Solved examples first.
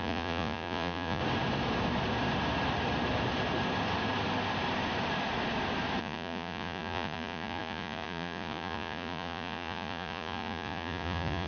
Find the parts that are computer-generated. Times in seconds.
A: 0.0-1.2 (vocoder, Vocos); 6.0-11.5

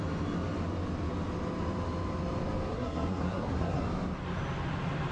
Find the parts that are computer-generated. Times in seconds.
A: 2.7-3.8 (codec, SNAC)

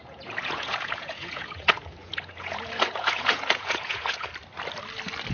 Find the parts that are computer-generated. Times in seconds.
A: 0.0-4.3 (vocoder, Vocos)